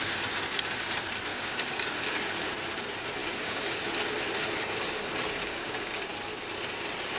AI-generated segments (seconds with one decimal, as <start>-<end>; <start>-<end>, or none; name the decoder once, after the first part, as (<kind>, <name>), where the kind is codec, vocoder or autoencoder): 1.3-2.5 (codec, DAC); 3.2-3.8; 5.4-6.1